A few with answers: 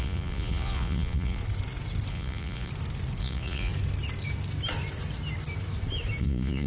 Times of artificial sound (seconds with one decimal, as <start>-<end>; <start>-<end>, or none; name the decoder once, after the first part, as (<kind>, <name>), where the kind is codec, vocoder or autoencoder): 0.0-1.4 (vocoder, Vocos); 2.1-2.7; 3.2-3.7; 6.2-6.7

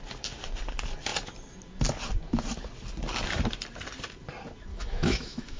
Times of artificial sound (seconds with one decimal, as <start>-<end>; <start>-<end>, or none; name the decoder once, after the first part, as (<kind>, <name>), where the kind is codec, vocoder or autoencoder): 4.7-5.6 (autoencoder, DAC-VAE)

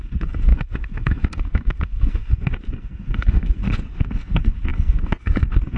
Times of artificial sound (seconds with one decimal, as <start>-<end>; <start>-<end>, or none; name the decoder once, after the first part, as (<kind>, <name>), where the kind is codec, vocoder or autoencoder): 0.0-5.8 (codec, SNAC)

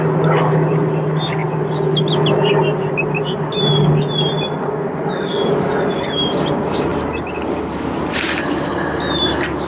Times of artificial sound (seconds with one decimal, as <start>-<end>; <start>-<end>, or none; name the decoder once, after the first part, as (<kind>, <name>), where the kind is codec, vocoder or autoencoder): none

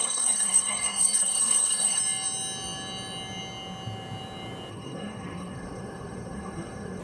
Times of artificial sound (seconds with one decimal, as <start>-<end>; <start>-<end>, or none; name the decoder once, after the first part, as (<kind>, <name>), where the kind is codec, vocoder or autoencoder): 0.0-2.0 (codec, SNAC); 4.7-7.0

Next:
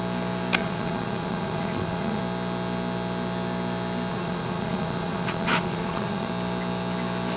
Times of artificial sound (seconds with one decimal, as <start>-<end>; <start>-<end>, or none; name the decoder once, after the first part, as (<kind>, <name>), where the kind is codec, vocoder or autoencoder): 0.6-2.2 (vocoder, Vocos); 4.1-6.3

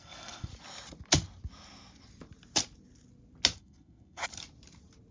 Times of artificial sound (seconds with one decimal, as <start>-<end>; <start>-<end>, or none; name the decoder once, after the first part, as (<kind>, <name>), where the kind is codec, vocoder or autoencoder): 0.0-0.5 (codec, SNAC); 3.6-4.2

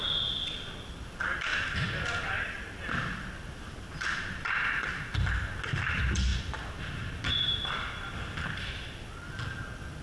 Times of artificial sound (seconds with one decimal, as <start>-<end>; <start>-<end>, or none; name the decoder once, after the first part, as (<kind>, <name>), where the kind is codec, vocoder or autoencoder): none